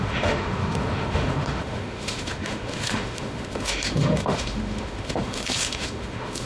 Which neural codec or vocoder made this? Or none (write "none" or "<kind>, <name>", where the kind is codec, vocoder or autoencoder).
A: autoencoder, DAC-VAE